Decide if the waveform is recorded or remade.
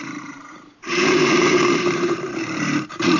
remade